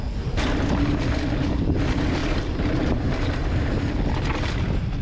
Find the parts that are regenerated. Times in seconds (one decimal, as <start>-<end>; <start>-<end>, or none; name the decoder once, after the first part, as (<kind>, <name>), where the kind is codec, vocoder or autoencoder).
2.2-3.1 (vocoder, BigVGAN v2)